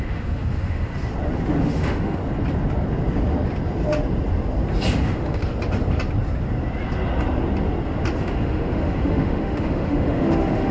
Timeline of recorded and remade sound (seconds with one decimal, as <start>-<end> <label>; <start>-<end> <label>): 0.0-0.9 remade; 0.9-1.6 recorded; 1.6-2.2 remade; 2.2-4.9 recorded; 4.9-5.4 remade; 5.4-8.2 recorded; 8.2-10.7 remade